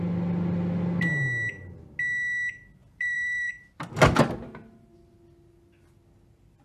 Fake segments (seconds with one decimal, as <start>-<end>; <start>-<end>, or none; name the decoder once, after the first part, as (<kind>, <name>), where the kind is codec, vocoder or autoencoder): 2.8-3.5 (vocoder, BigVGAN v2)